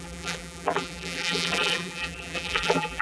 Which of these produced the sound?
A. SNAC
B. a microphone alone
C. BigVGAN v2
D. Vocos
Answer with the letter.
C